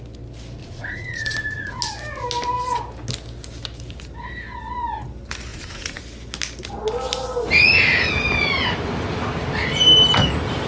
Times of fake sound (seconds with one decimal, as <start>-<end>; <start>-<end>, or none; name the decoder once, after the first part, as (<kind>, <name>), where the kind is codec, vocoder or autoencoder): 0.6-1.8 (vocoder, Vocos); 5.5-6.0